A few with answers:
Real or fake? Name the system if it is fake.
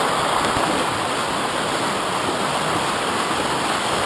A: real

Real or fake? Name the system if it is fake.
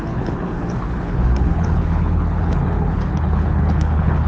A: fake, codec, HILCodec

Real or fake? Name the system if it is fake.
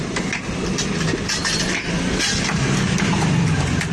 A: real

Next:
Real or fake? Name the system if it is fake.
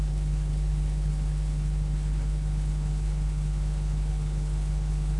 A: fake, codec, HILCodec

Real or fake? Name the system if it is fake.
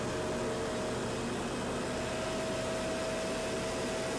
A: real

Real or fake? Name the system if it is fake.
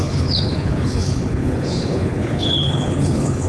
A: fake, codec, HILCodec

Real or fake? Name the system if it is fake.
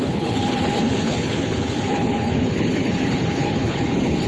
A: fake, codec, HILCodec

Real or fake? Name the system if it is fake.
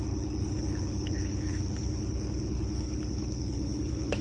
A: fake, codec, HILCodec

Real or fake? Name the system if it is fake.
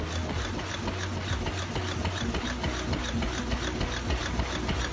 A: real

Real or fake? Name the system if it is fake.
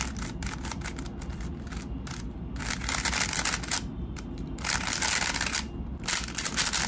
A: real